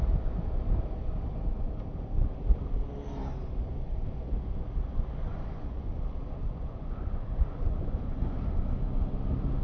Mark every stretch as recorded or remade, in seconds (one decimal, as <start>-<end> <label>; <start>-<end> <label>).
0.0-5.3 recorded; 5.3-5.9 remade; 5.9-6.4 recorded; 6.4-8.4 remade; 8.4-9.6 recorded